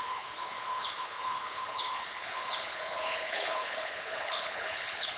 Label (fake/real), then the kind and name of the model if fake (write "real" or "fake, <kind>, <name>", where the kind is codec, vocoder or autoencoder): fake, codec, HILCodec